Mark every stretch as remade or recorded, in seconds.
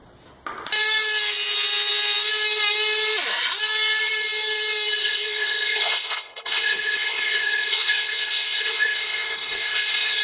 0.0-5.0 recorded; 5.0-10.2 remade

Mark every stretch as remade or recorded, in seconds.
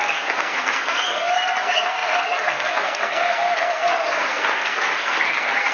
0.0-5.7 remade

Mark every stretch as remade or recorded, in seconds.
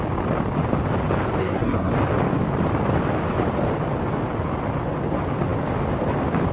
0.0-1.4 recorded; 1.4-1.9 remade; 1.9-6.5 recorded